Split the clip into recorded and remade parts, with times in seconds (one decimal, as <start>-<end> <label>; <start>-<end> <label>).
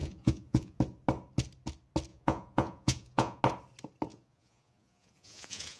0.0-0.8 remade; 0.8-2.1 recorded; 2.1-3.4 remade; 3.4-4.1 recorded; 4.1-5.8 remade